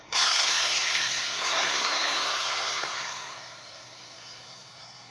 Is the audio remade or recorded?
remade